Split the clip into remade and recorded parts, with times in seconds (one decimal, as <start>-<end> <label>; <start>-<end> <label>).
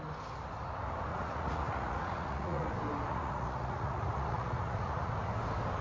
0.0-1.1 recorded; 1.1-2.7 remade; 2.7-3.1 recorded; 3.1-5.1 remade; 5.1-5.8 recorded